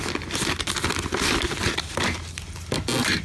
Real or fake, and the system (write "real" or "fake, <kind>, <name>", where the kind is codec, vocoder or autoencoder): real